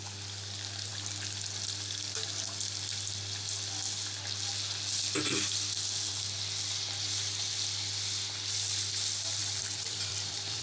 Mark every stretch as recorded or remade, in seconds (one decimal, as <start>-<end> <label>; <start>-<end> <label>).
0.0-9.4 recorded; 9.4-10.6 remade